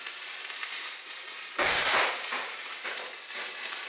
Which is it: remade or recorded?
remade